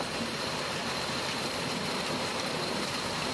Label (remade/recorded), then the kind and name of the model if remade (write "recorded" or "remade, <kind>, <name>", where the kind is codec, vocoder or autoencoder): remade, vocoder, BigVGAN v2